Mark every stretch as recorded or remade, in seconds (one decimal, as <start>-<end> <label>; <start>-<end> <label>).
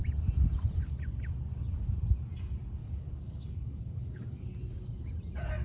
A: 0.0-2.8 recorded; 2.8-4.4 remade; 4.4-5.6 recorded